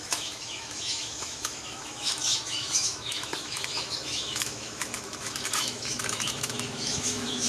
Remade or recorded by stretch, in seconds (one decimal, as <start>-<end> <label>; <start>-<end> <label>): 0.0-7.5 remade